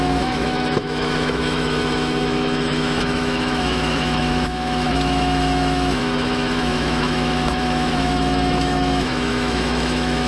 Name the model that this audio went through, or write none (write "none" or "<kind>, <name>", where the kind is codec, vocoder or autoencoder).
autoencoder, DAC-VAE